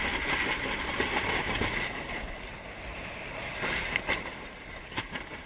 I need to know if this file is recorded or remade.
remade